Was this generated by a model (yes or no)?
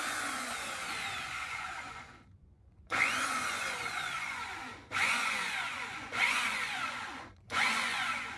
yes